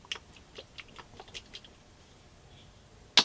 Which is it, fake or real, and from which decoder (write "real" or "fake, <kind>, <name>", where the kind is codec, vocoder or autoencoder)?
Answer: real